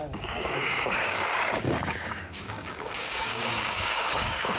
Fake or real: fake